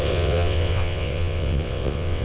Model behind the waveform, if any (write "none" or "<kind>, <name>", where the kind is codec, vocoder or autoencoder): vocoder, WaveNeXt